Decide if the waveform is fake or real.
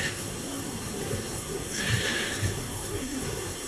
fake